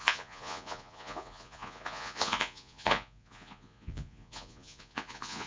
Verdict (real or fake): fake